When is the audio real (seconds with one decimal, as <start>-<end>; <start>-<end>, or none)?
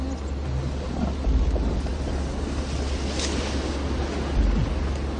0.0-5.2